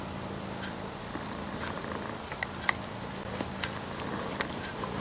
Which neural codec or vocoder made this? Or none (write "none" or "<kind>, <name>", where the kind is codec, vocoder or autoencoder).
none